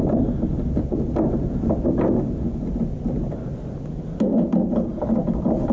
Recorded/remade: recorded